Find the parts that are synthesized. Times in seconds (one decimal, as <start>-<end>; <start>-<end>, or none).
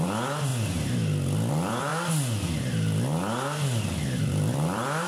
0.0-0.5; 1.5-1.9; 4.2-5.1